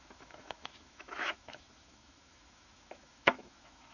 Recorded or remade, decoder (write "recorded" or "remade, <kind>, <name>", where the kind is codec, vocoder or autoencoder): remade, autoencoder, DAC-VAE